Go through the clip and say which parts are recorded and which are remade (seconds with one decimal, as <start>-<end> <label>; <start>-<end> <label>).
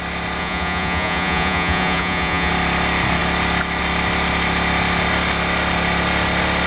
0.0-0.4 recorded; 0.4-2.5 remade; 2.5-6.7 recorded